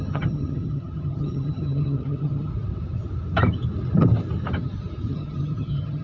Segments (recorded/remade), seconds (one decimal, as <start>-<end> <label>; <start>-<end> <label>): 0.0-2.5 remade; 2.5-5.1 recorded; 5.1-6.0 remade